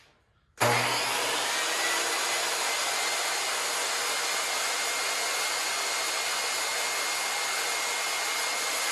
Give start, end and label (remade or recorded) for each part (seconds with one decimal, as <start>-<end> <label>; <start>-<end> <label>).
0.0-8.9 recorded